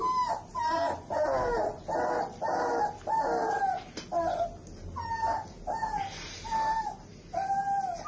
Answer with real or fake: real